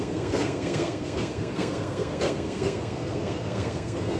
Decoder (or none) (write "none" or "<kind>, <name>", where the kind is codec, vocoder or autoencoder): codec, SNAC